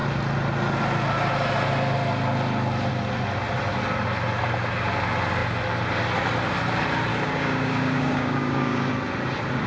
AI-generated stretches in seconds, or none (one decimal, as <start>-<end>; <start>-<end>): 7.1-8.9